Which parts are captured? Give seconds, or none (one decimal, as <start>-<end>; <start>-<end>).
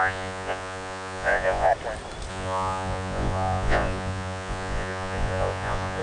1.7-2.3